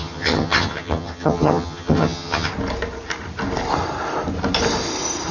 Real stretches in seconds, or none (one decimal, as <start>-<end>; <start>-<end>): 2.5-5.3